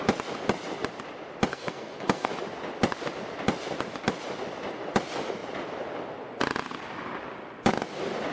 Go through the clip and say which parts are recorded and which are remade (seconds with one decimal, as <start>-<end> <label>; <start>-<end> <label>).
0.0-1.5 recorded; 1.5-2.3 remade; 2.3-8.3 recorded